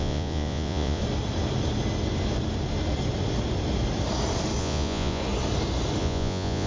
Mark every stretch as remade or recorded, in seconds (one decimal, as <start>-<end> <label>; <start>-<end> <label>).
0.0-1.0 remade; 1.0-4.6 recorded; 4.6-5.2 remade; 5.2-6.0 recorded; 6.0-6.7 remade